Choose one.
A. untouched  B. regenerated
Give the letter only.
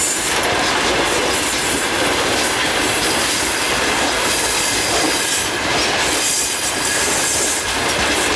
A